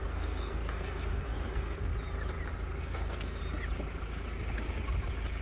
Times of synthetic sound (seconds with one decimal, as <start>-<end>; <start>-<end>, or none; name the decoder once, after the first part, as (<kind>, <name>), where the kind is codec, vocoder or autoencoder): 0.0-1.9 (codec, SNAC); 2.8-3.4